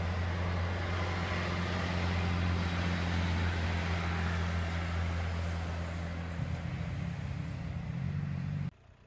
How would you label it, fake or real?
real